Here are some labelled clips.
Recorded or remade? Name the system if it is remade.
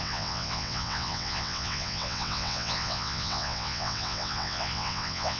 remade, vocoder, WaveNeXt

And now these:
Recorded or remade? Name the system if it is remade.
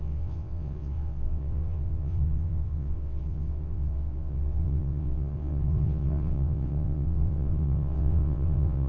remade, vocoder, WaveNeXt